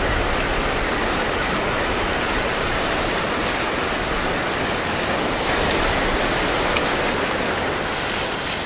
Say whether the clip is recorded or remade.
recorded